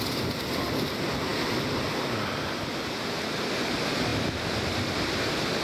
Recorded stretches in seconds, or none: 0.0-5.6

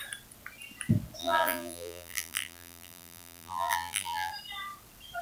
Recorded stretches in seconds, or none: 0.0-1.2; 4.3-5.2

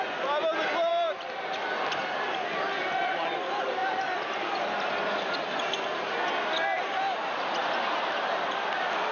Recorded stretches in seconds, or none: 0.0-0.9; 1.4-3.8; 4.8-7.6

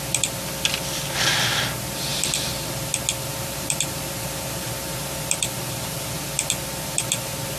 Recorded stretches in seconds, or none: 0.0-2.1; 2.9-3.3

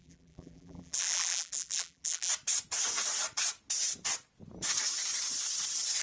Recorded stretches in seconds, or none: 2.3-6.0

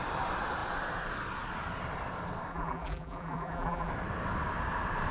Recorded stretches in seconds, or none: 0.0-2.5; 3.9-5.1